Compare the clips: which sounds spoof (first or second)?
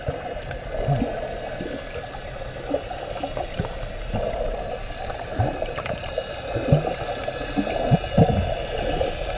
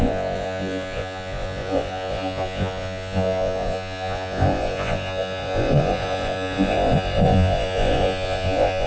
second